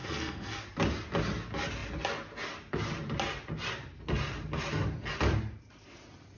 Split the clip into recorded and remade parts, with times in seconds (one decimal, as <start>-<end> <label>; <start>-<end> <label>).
0.0-0.6 remade; 0.6-6.4 recorded